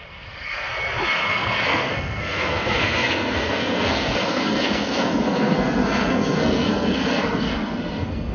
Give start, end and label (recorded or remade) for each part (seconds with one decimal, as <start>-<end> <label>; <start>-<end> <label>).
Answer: 0.0-0.7 remade; 0.7-1.3 recorded; 1.3-8.3 remade